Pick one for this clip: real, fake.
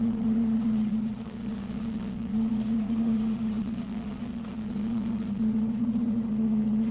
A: fake